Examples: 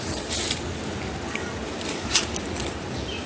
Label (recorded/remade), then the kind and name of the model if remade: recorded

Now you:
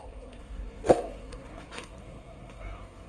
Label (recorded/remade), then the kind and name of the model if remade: remade, codec, SNAC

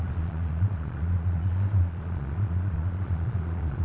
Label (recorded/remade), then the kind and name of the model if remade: remade, vocoder, Vocos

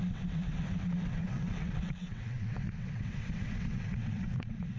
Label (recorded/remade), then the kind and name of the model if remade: remade, vocoder, WaveNeXt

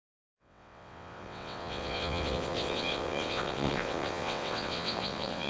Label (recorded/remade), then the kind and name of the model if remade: remade, vocoder, WaveNeXt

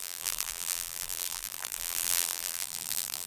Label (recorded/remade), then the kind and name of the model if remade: remade, vocoder, BigVGAN v2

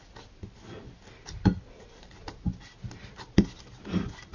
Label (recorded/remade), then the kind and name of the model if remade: recorded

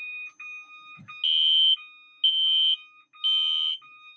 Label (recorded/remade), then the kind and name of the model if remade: recorded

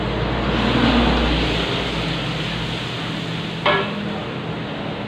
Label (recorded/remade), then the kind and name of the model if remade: recorded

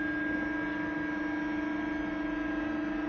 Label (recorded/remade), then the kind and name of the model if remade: recorded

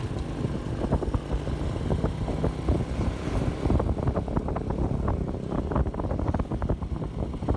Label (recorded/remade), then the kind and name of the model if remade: recorded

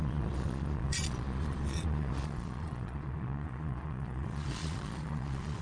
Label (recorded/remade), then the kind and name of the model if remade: remade, vocoder, Vocos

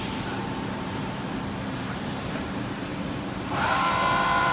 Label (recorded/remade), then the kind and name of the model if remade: remade, vocoder, BigVGAN v2